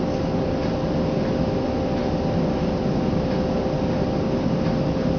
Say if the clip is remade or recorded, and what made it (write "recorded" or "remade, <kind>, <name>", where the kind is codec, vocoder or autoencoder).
recorded